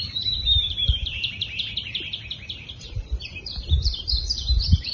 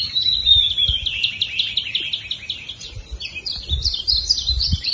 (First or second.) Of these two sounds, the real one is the second